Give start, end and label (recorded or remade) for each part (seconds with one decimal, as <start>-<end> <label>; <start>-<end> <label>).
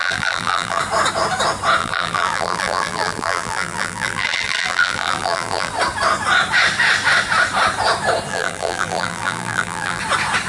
0.0-0.8 remade; 0.8-1.8 recorded; 1.8-5.7 remade; 5.7-8.3 recorded; 8.3-10.0 remade; 10.0-10.5 recorded